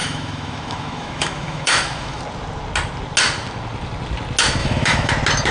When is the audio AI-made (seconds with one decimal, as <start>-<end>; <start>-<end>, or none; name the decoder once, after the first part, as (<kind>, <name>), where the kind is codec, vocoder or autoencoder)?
0.0-2.2 (autoencoder, DAC-VAE); 4.6-5.1